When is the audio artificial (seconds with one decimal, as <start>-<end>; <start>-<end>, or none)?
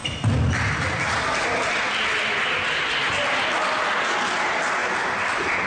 none